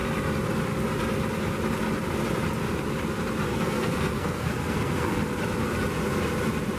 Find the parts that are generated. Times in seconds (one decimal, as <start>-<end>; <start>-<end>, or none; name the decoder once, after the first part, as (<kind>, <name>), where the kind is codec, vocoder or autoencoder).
3.5-5.2 (codec, SNAC)